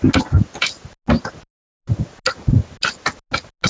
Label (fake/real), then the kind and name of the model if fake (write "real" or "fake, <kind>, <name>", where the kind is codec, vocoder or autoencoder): real